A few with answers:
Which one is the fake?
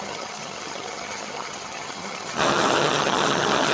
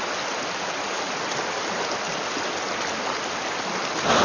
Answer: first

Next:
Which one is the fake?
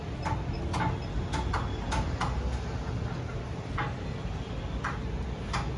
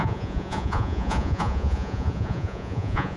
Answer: second